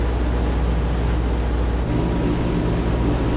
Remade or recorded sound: recorded